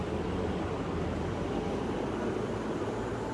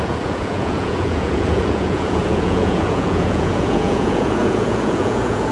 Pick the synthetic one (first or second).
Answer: second